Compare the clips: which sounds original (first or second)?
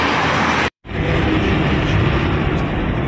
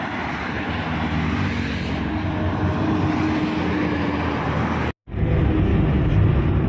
second